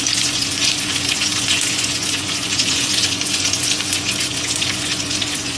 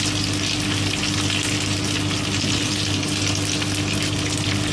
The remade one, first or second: first